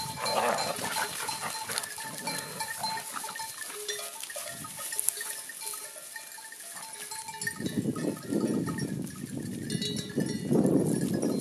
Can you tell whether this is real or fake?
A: real